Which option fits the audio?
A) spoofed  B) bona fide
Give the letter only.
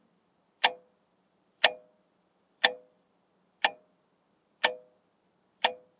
A